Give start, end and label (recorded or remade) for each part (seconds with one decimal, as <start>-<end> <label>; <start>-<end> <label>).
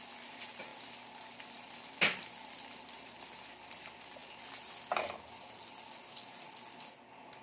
0.0-7.4 recorded